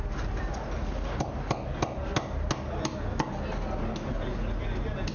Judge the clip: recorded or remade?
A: recorded